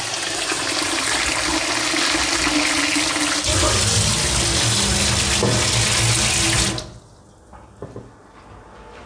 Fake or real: real